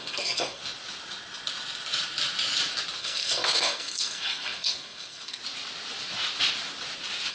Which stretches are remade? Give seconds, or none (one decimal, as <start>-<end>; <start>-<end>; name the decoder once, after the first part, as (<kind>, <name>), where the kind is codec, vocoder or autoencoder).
0.0-0.6 (codec, SNAC); 3.0-5.4